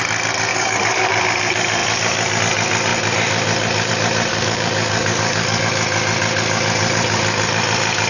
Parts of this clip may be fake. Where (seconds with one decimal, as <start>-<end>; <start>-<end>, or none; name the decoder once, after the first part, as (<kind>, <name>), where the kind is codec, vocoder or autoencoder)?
0.5-1.1 (codec, DAC); 4.3-5.6